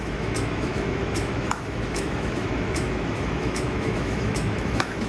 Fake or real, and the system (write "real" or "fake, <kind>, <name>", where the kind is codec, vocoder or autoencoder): fake, autoencoder, DAC-VAE